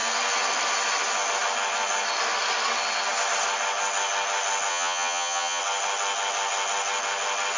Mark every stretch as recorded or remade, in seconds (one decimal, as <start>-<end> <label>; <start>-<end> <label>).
0.0-4.7 recorded; 4.7-5.6 remade; 5.6-7.6 recorded